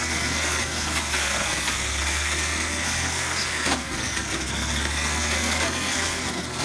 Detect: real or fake fake